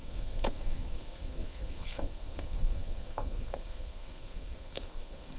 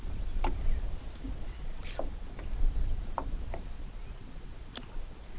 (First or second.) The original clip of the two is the second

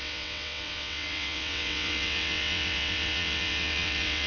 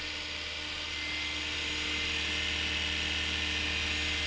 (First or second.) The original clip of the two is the second